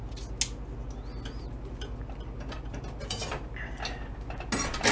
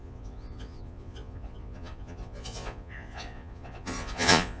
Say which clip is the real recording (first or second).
first